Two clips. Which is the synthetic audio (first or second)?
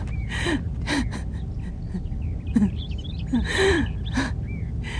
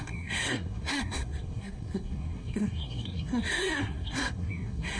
second